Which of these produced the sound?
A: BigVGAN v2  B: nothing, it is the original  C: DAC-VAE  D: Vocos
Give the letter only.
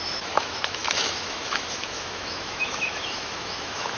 C